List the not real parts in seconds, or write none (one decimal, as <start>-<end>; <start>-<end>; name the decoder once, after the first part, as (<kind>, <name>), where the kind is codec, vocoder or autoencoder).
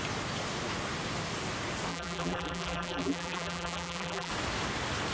1.9-4.3 (vocoder, BigVGAN v2)